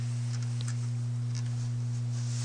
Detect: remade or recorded recorded